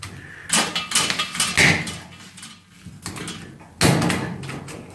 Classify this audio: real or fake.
real